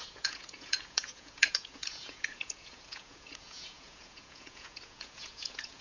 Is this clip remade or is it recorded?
remade